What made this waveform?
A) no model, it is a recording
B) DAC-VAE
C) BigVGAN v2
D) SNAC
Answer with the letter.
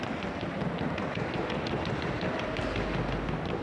A